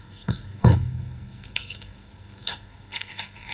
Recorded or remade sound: remade